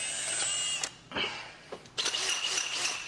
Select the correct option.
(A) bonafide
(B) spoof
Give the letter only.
A